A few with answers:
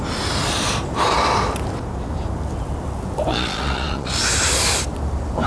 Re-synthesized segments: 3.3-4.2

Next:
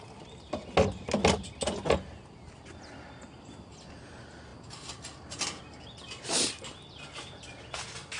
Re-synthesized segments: none

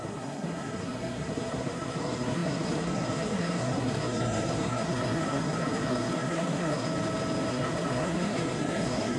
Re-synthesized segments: 0.0-6.9; 7.5-9.2

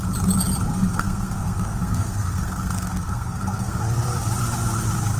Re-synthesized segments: 0.7-3.8